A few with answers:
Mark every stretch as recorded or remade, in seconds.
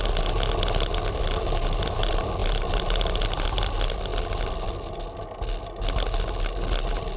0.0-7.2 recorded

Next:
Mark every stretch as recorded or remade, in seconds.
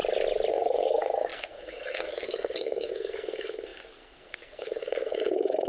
0.0-0.5 recorded; 0.5-5.7 remade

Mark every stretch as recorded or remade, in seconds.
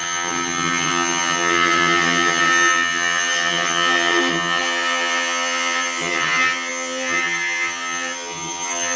0.0-9.0 remade